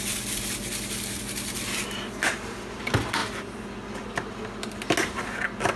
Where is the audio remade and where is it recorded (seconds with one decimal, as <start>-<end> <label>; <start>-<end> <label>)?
0.0-5.8 recorded